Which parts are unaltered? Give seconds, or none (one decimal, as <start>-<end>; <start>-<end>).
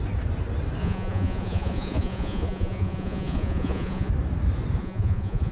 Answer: 0.0-0.8; 4.1-4.8